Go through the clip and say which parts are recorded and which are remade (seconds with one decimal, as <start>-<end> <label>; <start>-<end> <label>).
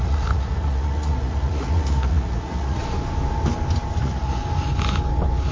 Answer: 0.0-2.8 remade; 2.8-4.0 recorded; 4.0-4.4 remade; 4.4-5.5 recorded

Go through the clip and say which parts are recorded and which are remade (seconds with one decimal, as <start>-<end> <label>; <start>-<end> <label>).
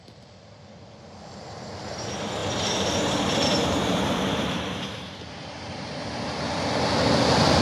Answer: 0.0-2.4 recorded; 2.4-6.7 remade; 6.7-7.6 recorded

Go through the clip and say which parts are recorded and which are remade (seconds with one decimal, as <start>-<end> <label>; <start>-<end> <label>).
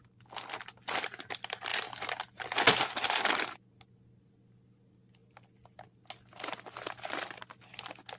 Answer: 0.0-8.2 recorded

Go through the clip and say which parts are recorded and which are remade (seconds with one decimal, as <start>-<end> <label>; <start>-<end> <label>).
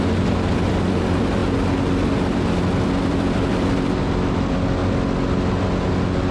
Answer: 0.0-1.4 remade; 1.4-2.2 recorded; 2.2-4.8 remade; 4.8-6.3 recorded